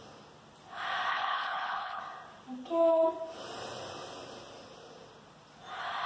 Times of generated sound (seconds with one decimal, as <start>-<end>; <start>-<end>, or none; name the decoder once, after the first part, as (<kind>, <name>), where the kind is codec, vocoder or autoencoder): 1.1-2.0 (codec, HILCodec)